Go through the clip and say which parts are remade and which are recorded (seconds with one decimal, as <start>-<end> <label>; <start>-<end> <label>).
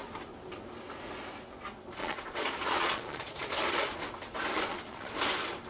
0.0-2.0 recorded; 2.0-3.5 remade; 3.5-4.5 recorded; 4.5-5.1 remade; 5.1-5.7 recorded